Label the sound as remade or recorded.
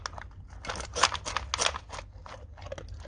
recorded